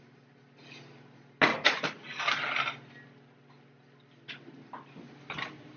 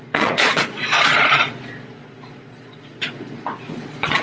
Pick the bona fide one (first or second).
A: first